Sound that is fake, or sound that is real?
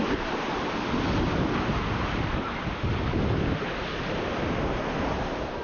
real